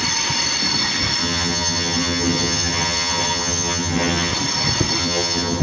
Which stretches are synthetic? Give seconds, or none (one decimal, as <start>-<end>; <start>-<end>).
1.2-4.3; 5.0-5.6